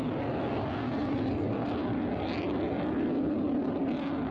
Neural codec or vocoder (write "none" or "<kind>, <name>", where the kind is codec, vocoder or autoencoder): none